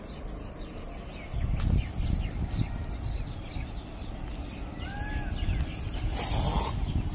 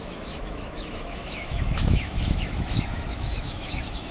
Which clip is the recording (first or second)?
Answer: first